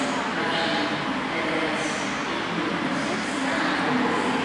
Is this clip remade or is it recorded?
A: recorded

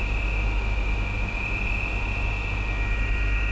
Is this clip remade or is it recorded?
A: recorded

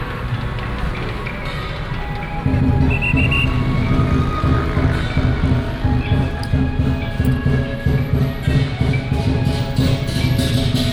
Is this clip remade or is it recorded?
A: recorded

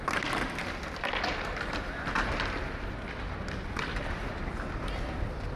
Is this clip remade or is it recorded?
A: recorded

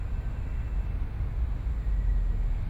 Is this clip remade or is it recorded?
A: recorded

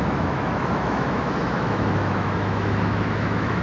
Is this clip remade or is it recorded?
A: remade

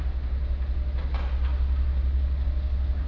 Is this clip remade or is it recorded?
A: recorded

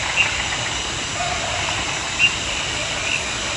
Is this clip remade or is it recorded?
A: recorded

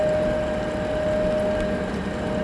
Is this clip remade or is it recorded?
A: recorded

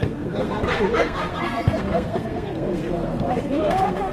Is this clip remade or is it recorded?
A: remade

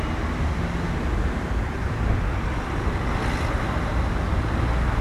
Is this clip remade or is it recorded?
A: recorded